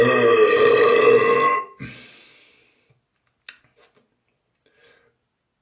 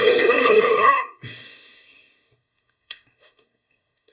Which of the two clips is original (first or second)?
first